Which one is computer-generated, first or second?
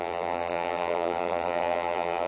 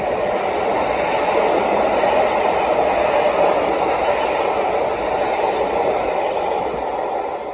first